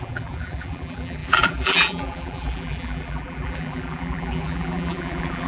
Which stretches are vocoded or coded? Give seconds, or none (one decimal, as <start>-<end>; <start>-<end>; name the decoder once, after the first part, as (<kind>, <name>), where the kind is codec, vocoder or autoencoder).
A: 0.0-5.5 (vocoder, BigVGAN v2)

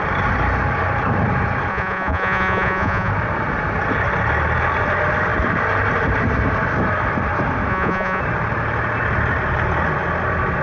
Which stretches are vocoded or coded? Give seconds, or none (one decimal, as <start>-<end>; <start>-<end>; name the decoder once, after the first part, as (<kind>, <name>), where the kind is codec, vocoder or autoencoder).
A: 1.7-3.1 (vocoder, Vocos); 7.7-8.2

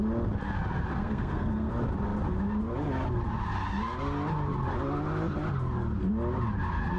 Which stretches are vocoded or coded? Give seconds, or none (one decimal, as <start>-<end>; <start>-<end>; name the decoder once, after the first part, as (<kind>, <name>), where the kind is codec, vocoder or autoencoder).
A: 0.9-1.7 (codec, SNAC)

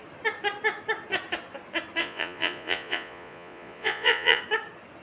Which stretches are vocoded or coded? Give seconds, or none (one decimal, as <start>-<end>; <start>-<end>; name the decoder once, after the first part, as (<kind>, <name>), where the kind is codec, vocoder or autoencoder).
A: 2.0-4.4 (vocoder, Vocos)

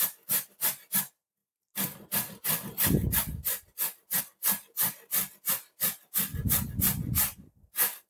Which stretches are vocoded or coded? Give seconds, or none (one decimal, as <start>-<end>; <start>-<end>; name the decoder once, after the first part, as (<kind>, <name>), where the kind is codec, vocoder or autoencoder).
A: none